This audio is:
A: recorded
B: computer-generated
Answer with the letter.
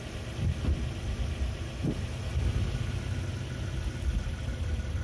A